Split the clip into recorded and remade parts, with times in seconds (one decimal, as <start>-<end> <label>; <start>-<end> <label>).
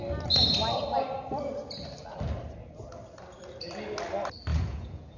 0.0-4.5 recorded; 4.5-5.2 remade